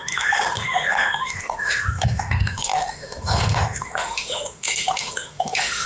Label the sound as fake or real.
fake